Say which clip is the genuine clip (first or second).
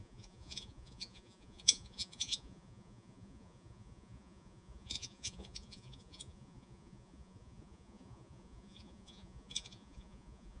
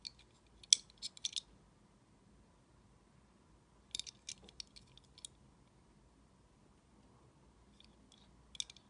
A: second